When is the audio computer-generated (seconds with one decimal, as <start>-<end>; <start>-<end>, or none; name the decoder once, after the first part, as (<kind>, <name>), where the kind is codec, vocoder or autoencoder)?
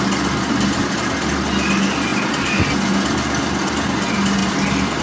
none